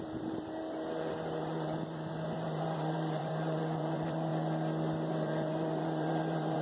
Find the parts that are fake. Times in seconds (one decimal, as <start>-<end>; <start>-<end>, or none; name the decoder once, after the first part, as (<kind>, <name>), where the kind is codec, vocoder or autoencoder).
0.0-4.3 (vocoder, BigVGAN v2); 5.1-6.6